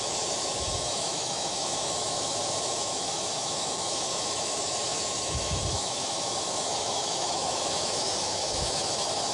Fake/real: fake